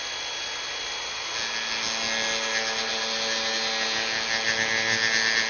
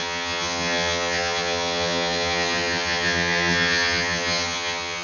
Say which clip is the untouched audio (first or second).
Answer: first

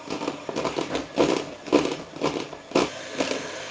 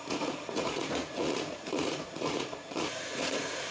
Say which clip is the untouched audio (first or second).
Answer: first